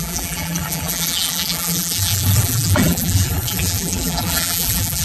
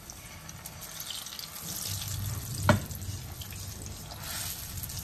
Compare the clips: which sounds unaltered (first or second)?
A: second